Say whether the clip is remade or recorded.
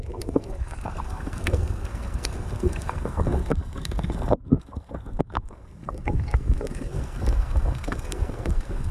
remade